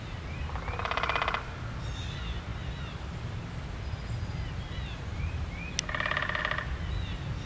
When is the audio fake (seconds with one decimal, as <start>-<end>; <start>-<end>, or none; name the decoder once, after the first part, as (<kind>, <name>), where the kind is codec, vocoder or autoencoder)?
none